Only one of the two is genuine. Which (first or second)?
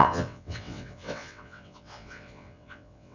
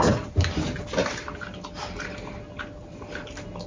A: second